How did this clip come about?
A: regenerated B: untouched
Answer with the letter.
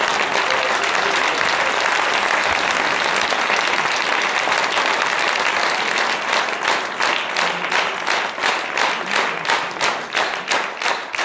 B